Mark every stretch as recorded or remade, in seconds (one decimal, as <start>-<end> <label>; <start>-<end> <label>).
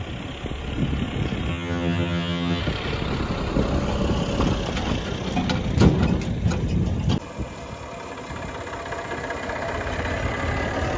0.0-1.5 recorded; 1.5-2.6 remade; 2.6-11.0 recorded